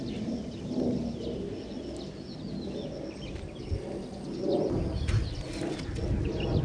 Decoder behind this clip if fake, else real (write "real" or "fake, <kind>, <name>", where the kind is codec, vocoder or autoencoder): real